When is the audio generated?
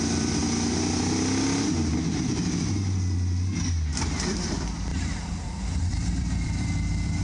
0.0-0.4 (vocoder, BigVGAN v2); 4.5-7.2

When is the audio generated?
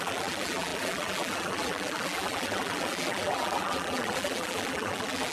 0.0-5.3 (vocoder, BigVGAN v2)